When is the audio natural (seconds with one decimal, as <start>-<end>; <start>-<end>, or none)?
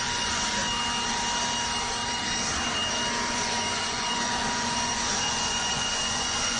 0.6-3.3